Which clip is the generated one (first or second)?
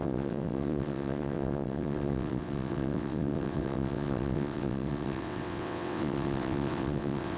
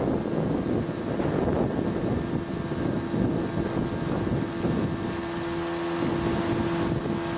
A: first